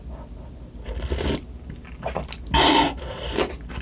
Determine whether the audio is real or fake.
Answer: real